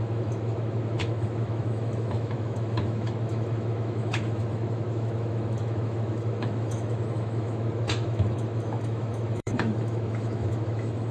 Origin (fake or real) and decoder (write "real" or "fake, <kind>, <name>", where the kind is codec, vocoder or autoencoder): fake, autoencoder, DAC-VAE